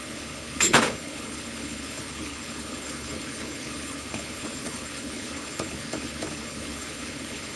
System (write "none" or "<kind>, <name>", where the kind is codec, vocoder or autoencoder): codec, HILCodec